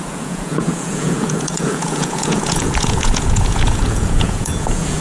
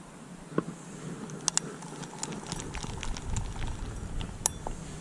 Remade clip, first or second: first